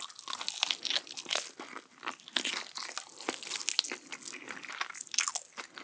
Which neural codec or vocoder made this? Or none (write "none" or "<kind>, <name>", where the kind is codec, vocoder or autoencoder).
none